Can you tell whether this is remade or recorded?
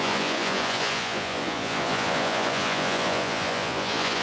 remade